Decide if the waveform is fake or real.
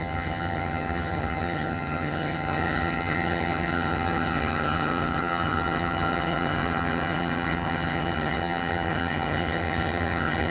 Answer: fake